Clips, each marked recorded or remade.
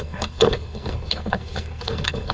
remade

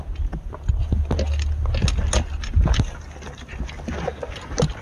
recorded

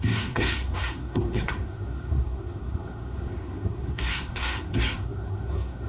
remade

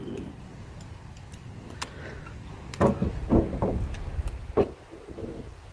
recorded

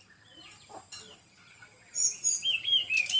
recorded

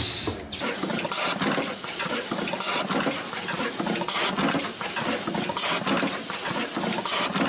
recorded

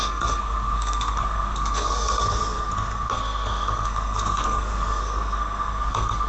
remade